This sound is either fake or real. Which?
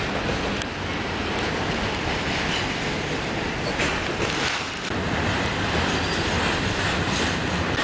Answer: real